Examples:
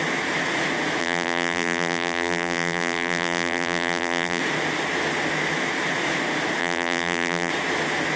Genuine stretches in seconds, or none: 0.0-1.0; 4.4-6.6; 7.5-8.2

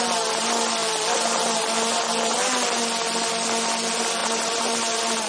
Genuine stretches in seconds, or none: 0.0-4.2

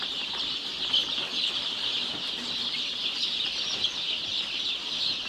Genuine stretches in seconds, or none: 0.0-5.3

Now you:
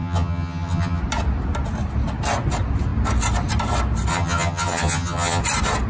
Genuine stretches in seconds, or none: 1.0-4.1; 5.4-5.9

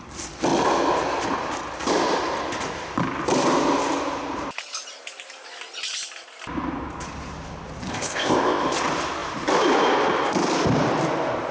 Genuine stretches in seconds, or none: 0.0-7.9; 8.6-11.5

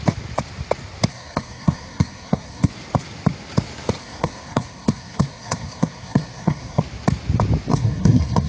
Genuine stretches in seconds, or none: 0.0-1.1; 2.7-4.0; 6.8-7.7

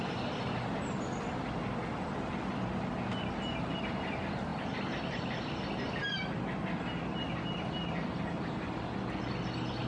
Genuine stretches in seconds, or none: 0.0-9.9

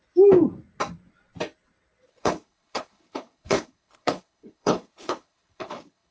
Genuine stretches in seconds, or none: 0.0-2.1